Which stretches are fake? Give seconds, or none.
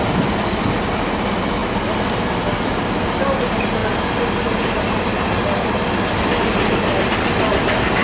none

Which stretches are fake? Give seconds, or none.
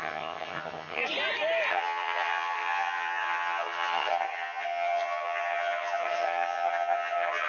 0.0-1.0 (vocoder, HiFi-GAN); 1.7-7.5